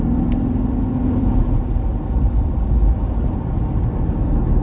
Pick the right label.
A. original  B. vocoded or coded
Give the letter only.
A